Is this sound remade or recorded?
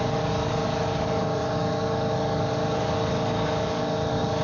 remade